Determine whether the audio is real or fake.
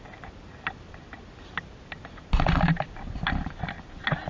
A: real